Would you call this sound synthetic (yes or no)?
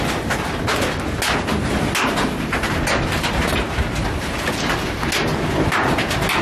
no